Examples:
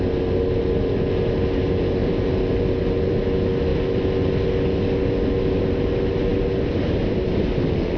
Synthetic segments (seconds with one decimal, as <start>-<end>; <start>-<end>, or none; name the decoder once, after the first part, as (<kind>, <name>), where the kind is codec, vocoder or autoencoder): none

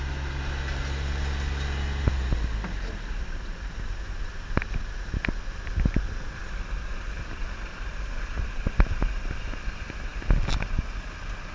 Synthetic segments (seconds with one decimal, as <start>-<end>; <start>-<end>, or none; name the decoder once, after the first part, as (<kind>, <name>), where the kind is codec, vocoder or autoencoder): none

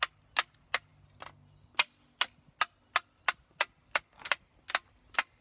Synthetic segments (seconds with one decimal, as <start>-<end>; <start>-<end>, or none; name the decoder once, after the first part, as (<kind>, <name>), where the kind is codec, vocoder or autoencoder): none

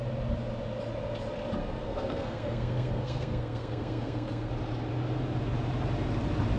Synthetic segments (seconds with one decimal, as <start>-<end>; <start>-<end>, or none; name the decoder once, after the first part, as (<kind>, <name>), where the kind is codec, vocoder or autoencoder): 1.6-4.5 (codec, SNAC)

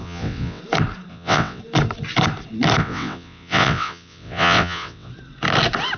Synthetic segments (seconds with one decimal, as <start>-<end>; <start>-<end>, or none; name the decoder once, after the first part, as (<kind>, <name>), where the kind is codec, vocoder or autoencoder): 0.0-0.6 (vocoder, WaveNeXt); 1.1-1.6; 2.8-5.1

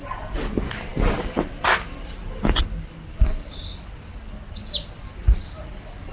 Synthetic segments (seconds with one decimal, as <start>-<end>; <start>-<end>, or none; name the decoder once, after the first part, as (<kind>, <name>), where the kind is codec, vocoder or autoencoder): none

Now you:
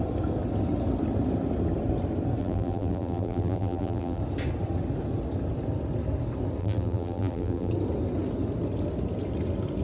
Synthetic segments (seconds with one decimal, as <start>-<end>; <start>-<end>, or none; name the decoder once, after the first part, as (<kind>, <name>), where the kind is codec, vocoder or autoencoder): 2.4-4.2 (vocoder, BigVGAN v2); 6.6-7.7